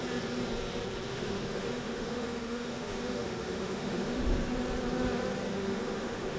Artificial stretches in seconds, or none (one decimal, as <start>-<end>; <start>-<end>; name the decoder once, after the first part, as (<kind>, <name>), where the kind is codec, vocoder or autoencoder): 1.1-4.5 (autoencoder, DAC-VAE); 5.5-6.4